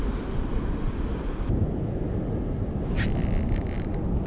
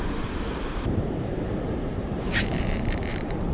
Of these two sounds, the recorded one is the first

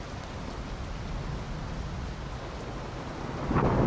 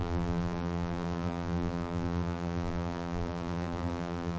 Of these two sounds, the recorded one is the first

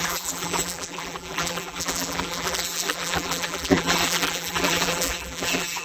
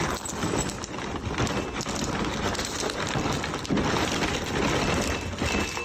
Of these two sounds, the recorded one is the second